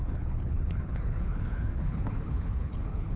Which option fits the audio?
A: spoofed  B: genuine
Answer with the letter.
A